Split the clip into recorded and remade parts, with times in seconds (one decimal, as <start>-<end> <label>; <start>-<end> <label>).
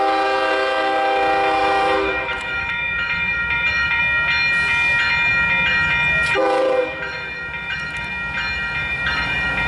0.0-1.6 recorded; 1.6-4.0 remade; 4.0-6.8 recorded; 6.8-8.1 remade; 8.1-8.8 recorded; 8.8-9.7 remade